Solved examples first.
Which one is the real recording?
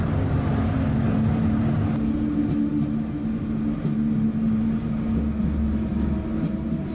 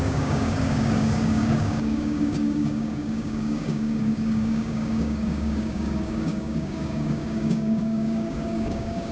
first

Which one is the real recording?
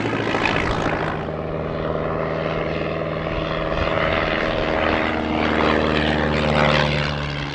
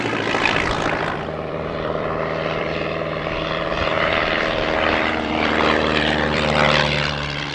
first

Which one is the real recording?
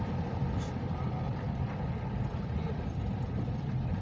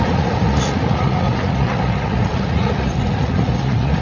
first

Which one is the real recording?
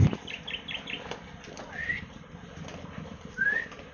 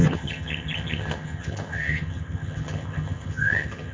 first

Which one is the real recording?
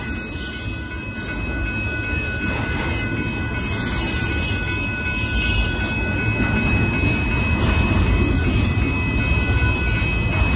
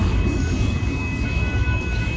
first